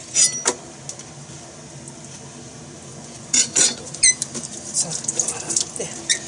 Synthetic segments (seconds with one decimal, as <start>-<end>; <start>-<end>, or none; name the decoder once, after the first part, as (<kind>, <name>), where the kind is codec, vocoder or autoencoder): 2.9-3.9 (vocoder, Vocos)